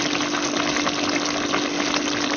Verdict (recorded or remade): recorded